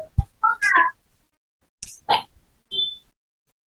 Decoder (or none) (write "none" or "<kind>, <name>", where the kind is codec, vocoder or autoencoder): none